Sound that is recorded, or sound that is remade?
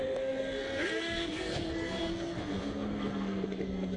remade